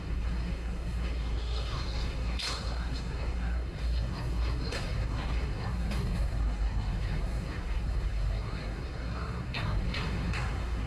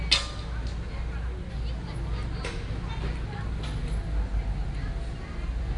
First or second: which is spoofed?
first